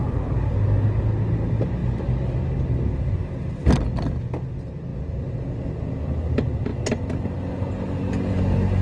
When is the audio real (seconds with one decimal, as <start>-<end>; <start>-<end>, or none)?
0.6-4.9; 5.6-8.8